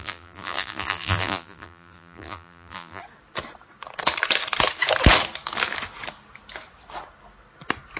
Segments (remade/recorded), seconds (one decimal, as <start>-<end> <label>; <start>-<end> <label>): 0.0-3.0 remade; 3.0-8.0 recorded